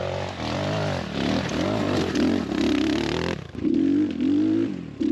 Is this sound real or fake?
real